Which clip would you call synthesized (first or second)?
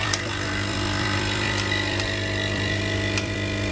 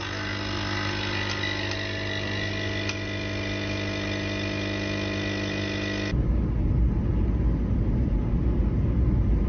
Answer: first